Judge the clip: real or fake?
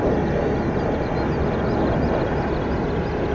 real